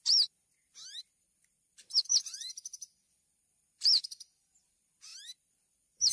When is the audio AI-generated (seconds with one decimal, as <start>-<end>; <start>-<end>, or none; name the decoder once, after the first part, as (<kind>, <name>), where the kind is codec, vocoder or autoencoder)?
0.0-6.1 (vocoder, BigVGAN v2)